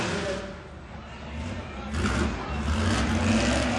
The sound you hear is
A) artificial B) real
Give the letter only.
B